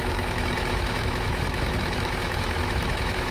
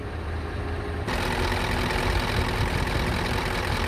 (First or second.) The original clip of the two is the second